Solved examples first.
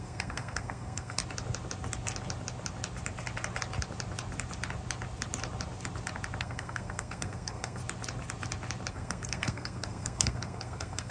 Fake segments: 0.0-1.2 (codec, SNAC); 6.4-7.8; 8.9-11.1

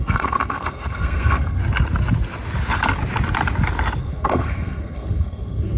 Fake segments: 0.0-1.6 (codec, SNAC); 4.0-5.8

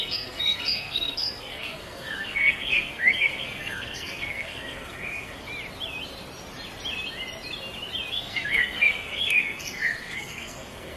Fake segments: 0.0-5.5 (codec, SNAC); 8.1-11.0

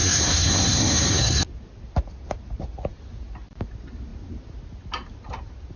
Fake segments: 0.0-1.4 (codec, SNAC)

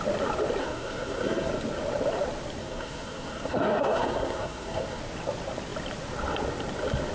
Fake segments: 0.6-1.5 (codec, SNAC); 2.6-5.0

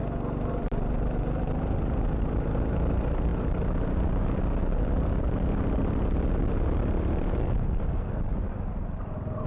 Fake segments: 7.4-8.2 (codec, SNAC)

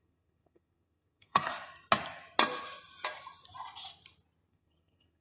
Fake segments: 0.0-1.5 (codec, SNAC); 4.5-5.2

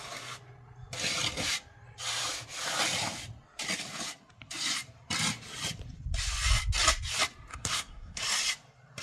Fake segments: 7.5-8.2 (codec, SNAC)